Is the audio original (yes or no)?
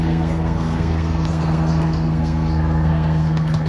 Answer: no